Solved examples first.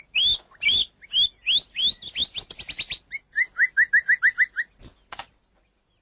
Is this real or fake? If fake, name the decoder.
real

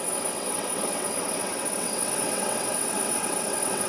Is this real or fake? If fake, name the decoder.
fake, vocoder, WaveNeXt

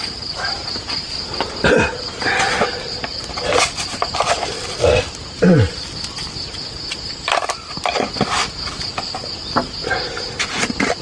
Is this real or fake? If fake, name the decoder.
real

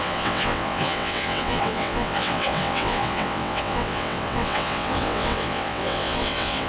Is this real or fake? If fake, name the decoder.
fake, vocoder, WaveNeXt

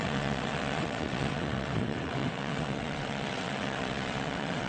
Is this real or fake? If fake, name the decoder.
fake, vocoder, WaveNeXt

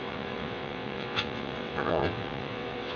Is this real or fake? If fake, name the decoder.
fake, vocoder, WaveNeXt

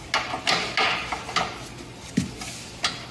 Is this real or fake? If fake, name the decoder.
real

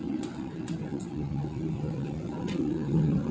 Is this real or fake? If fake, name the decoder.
fake, vocoder, WaveNeXt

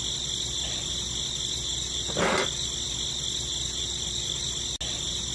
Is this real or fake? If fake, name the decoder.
real